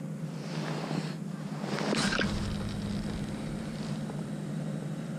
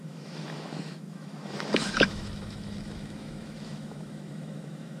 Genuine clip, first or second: first